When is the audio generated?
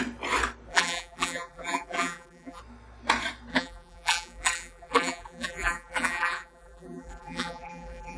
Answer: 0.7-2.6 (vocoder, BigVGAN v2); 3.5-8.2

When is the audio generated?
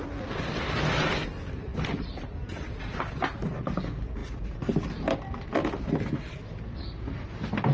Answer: 1.7-2.4 (vocoder, BigVGAN v2)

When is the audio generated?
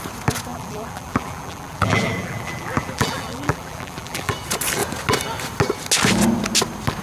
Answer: 0.5-4.3 (vocoder, BigVGAN v2)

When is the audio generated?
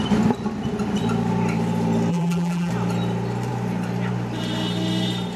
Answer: 2.1-2.7 (vocoder, BigVGAN v2)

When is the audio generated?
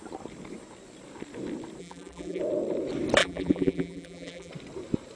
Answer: 1.8-2.4 (vocoder, BigVGAN v2); 3.2-4.5